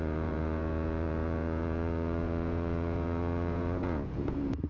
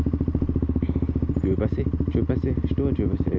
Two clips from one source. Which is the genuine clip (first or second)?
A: second